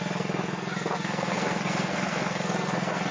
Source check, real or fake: fake